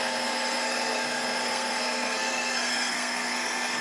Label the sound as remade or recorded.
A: remade